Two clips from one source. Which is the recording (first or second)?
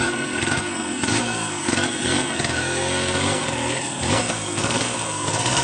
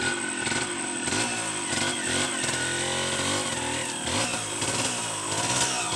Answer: second